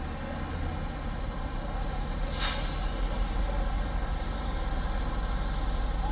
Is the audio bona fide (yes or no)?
yes